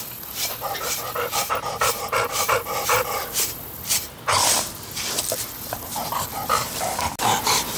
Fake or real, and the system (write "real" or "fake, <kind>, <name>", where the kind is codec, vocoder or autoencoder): real